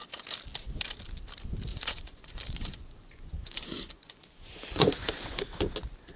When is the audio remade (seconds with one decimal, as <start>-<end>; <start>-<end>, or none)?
1.7-5.4